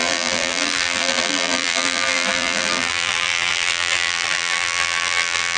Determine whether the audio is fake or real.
fake